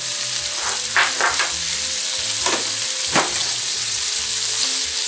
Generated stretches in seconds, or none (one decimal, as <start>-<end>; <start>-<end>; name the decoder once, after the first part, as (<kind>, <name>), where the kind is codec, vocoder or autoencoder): 3.4-4.0 (vocoder, WaveNeXt)

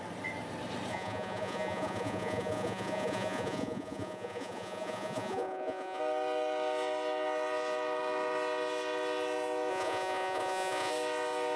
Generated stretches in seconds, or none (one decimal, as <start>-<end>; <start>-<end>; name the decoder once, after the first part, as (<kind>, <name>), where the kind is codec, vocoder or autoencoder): 0.9-6.0 (vocoder, Vocos); 9.7-10.9

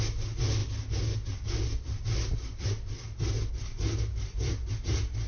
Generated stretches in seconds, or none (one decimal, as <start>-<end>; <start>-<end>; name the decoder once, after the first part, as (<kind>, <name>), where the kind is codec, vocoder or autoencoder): none